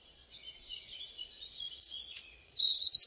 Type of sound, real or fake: fake